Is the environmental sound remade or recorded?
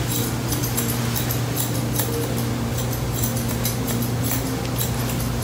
recorded